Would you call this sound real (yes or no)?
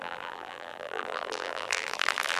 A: no